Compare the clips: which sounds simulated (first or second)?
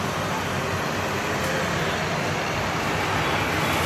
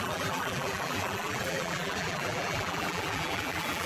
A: second